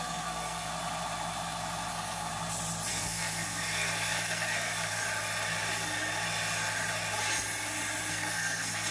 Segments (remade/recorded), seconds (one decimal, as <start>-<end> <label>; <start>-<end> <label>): 0.0-0.7 remade; 0.7-1.9 recorded; 1.9-2.3 remade; 2.3-2.9 recorded; 2.9-5.0 remade; 5.0-8.1 recorded; 8.1-8.9 remade